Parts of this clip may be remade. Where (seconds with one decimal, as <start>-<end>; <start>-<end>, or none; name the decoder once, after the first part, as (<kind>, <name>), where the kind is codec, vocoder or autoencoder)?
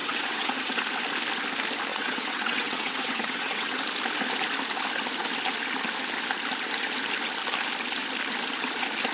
0.0-0.8 (vocoder, WaveNeXt); 1.9-3.8